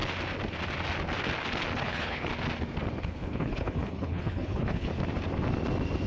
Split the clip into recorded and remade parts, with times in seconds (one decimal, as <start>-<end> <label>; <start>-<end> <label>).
0.0-1.8 recorded; 1.8-2.3 remade; 2.3-3.0 recorded; 3.0-4.9 remade; 4.9-6.1 recorded